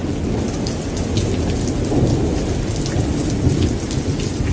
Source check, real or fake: real